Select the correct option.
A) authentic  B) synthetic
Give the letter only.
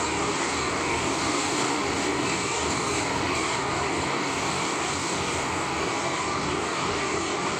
B